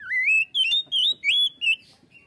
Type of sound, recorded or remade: recorded